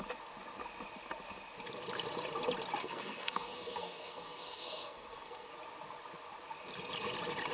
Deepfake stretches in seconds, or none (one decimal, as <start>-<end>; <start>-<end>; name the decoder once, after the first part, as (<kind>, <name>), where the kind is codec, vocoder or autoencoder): 2.8-5.5 (codec, SNAC)